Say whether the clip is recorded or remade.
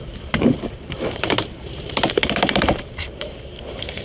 remade